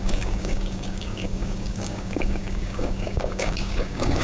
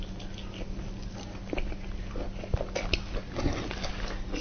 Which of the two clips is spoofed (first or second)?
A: first